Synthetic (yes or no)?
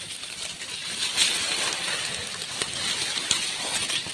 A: no